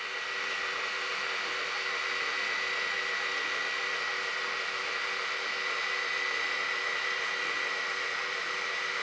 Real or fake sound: real